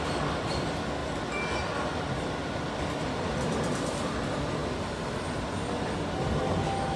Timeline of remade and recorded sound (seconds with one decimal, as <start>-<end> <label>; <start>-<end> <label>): 0.0-7.0 recorded